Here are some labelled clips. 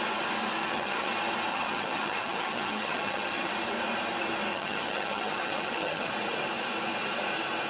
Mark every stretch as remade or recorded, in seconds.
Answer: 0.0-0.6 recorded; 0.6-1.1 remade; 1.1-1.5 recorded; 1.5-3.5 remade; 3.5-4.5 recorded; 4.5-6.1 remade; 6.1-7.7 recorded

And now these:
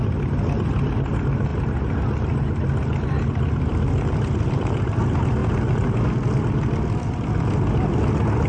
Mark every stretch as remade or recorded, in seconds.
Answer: 0.0-8.5 recorded

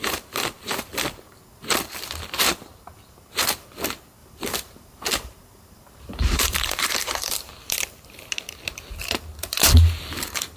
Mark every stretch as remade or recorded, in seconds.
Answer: 0.0-4.2 recorded; 4.2-7.5 remade; 7.5-10.6 recorded

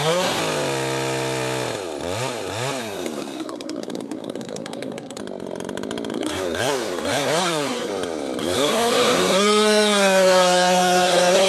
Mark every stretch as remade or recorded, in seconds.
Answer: 0.0-0.4 remade; 0.4-2.8 recorded; 2.8-5.2 remade; 5.2-6.1 recorded; 6.1-7.9 remade; 7.9-8.4 recorded; 8.4-11.5 remade

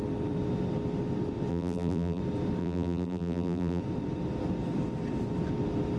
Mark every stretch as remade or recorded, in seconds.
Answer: 0.0-1.5 recorded; 1.5-2.2 remade; 2.2-2.6 recorded; 2.6-3.8 remade; 3.8-6.0 recorded

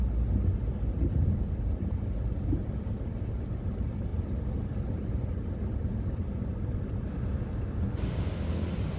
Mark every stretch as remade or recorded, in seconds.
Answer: 0.0-9.0 recorded

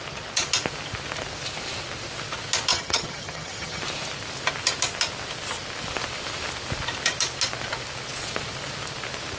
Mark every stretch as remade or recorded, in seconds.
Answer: 0.0-2.7 recorded; 2.7-3.8 remade; 3.8-9.4 recorded

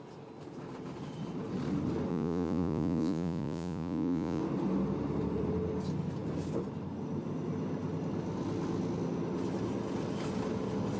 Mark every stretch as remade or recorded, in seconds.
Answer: 0.0-2.1 recorded; 2.1-4.4 remade; 4.4-11.0 recorded